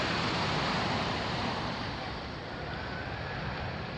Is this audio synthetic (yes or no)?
yes